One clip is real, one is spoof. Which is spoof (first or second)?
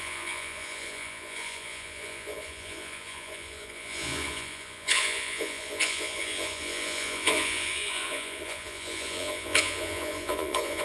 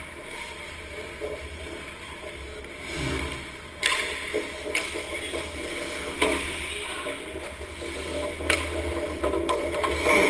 first